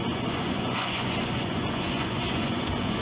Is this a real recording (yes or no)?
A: no